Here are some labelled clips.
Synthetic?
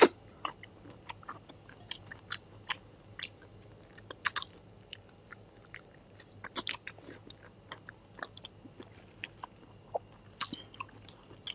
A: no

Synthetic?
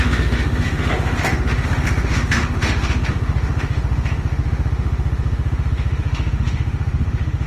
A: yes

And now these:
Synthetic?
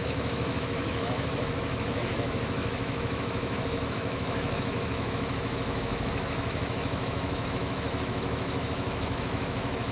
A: yes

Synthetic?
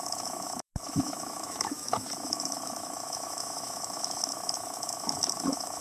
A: yes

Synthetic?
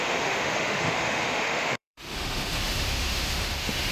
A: yes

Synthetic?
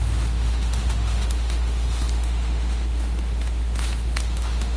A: yes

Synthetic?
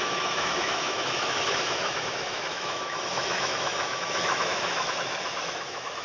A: yes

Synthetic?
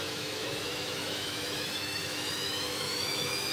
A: yes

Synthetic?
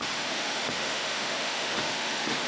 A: yes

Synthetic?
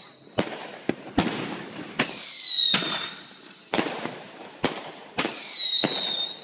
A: no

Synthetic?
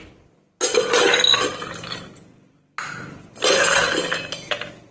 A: no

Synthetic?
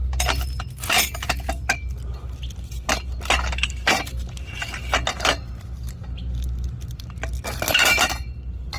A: no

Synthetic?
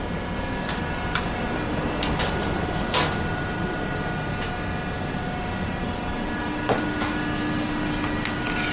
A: no